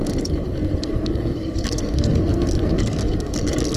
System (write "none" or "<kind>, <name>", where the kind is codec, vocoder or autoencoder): codec, SNAC